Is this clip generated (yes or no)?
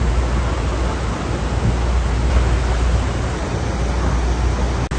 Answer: no